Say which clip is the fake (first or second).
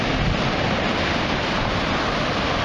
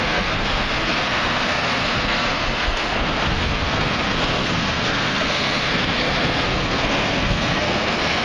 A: second